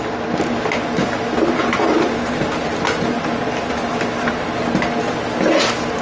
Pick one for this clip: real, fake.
real